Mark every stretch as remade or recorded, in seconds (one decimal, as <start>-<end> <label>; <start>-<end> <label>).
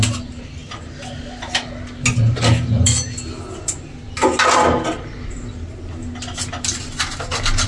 0.0-7.7 recorded